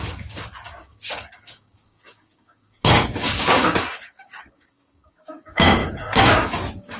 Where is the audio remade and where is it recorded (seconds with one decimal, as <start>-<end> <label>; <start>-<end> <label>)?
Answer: 0.0-7.0 remade

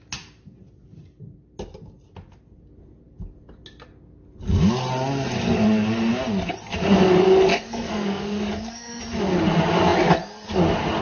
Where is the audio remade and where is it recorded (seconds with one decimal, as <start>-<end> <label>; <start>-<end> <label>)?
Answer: 0.0-7.5 recorded; 7.5-9.0 remade; 9.0-11.0 recorded

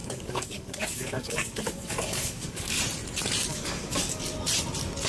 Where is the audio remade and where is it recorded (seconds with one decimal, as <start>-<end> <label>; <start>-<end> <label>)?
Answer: 0.0-2.8 remade; 2.8-3.5 recorded; 3.5-4.2 remade; 4.2-5.1 recorded

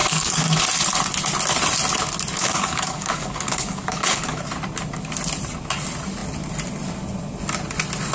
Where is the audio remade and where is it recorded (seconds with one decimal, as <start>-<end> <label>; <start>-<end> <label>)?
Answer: 0.0-0.6 remade; 0.6-2.4 recorded; 2.4-4.4 remade; 4.4-8.1 recorded

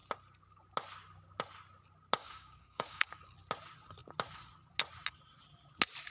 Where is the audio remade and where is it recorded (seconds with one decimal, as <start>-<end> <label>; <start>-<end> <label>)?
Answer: 0.0-2.2 recorded; 2.2-3.1 remade; 3.1-6.1 recorded